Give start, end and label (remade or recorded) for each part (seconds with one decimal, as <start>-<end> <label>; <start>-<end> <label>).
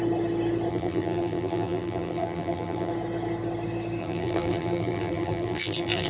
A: 0.0-0.7 recorded; 0.7-2.9 remade; 2.9-4.0 recorded; 4.0-6.1 remade